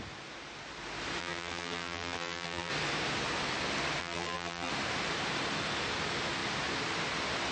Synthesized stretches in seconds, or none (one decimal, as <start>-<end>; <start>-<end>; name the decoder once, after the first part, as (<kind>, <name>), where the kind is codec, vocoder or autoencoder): 1.2-2.7 (vocoder, BigVGAN v2); 4.0-4.7